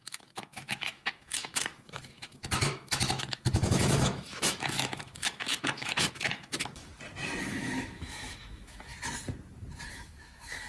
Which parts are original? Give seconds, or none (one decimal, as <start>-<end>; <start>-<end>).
6.9-7.4; 8.9-9.9